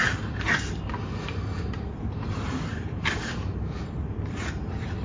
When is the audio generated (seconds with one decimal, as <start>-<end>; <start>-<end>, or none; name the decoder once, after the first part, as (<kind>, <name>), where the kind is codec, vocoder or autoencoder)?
0.0-5.0 (vocoder, BigVGAN v2)